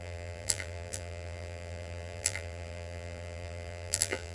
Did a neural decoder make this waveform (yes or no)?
yes